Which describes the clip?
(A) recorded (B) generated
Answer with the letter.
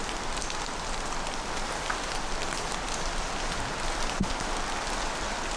A